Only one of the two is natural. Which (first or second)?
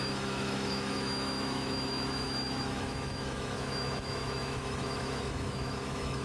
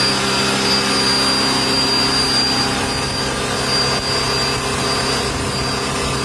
second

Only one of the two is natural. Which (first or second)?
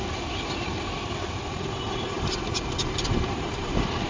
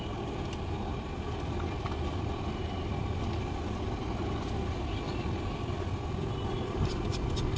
second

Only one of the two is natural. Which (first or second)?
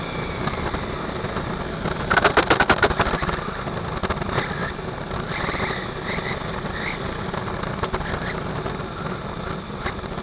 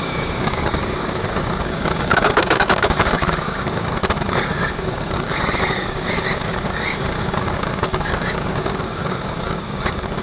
first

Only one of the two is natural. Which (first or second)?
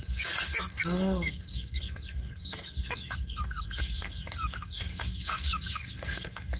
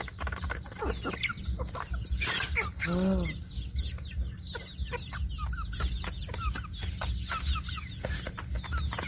second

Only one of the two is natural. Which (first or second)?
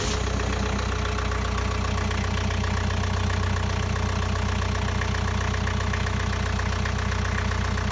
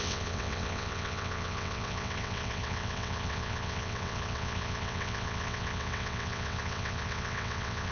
first